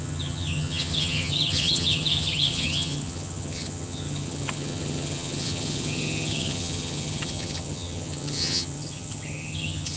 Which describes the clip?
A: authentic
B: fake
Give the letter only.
B